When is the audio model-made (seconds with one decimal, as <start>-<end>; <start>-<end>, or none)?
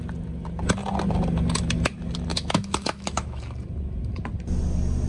2.3-3.4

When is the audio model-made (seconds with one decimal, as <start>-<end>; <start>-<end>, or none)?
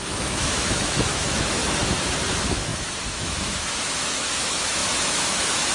0.0-1.6; 2.3-5.7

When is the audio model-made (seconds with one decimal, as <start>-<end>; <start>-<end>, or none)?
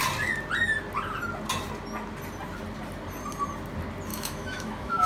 4.1-5.1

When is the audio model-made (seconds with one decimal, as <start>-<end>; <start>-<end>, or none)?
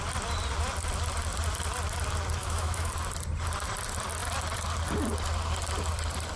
2.4-2.9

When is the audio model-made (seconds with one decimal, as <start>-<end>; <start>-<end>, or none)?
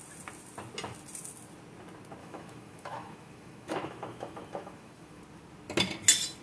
2.2-5.2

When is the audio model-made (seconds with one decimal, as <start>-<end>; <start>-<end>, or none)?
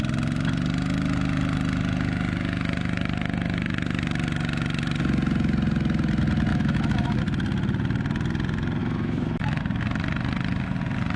6.5-7.2; 8.8-9.6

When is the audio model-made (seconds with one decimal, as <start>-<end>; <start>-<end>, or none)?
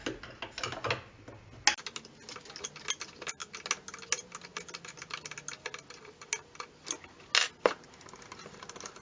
none